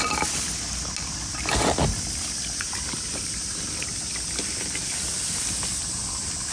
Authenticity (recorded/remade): recorded